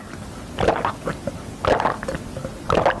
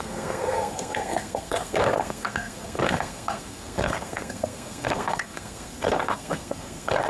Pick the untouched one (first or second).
first